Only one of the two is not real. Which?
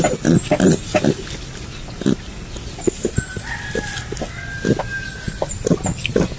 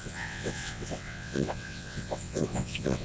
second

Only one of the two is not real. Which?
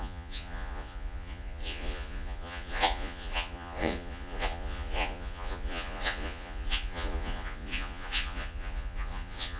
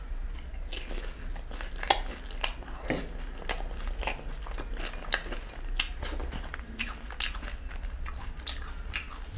first